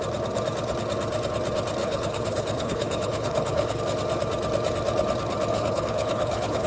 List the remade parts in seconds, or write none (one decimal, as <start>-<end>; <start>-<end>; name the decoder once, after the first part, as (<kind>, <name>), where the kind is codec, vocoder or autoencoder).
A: 1.8-3.8 (codec, HILCodec); 5.5-6.7